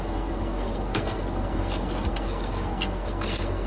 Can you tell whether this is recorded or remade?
remade